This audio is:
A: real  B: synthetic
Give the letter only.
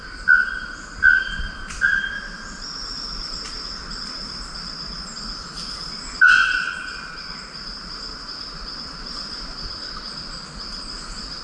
A